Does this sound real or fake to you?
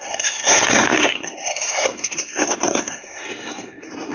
fake